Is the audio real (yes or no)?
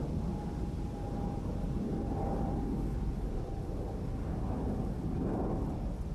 yes